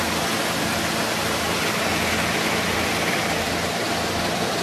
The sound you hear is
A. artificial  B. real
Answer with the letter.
A